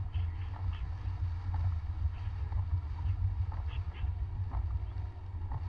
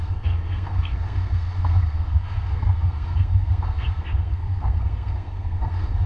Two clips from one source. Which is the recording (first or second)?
first